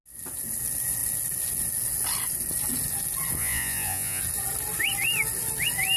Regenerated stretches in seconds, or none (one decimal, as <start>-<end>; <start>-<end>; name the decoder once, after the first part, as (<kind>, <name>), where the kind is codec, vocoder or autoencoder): 3.4-4.2 (vocoder, Vocos)